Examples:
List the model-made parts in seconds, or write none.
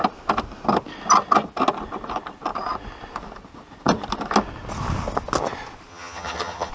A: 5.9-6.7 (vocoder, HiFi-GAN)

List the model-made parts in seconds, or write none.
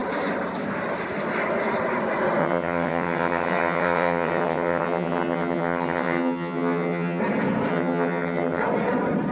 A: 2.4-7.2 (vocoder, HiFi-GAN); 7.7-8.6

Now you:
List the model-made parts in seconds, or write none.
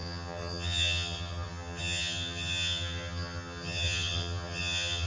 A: 0.0-5.1 (vocoder, HiFi-GAN)